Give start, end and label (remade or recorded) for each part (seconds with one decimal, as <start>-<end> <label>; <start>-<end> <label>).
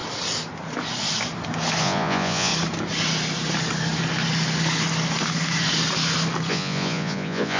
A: 0.0-1.8 recorded; 1.8-2.5 remade; 2.5-6.5 recorded; 6.5-7.6 remade